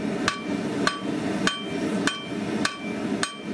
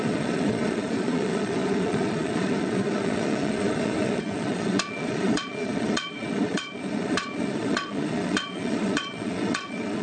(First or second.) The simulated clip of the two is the second